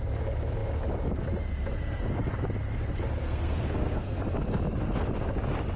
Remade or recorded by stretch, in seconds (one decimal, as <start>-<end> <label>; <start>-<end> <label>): 0.0-3.2 recorded; 3.2-4.2 remade; 4.2-5.8 recorded